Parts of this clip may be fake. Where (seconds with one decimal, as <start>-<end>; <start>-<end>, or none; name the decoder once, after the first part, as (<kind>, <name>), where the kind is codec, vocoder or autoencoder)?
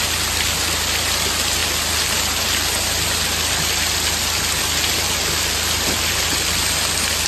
none